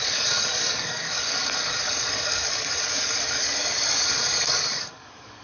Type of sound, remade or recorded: remade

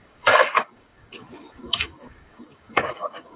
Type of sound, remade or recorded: remade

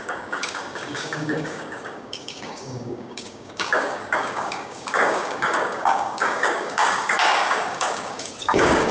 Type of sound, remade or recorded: remade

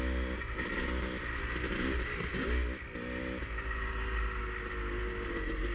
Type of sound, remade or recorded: recorded